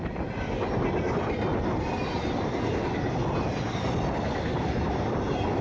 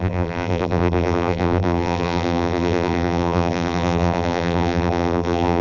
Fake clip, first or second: second